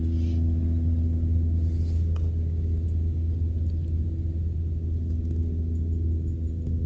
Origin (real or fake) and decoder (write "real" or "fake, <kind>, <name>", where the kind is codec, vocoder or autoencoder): real